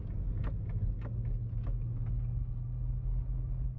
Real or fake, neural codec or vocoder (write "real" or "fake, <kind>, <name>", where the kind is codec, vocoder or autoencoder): real